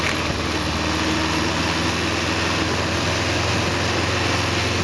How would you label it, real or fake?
real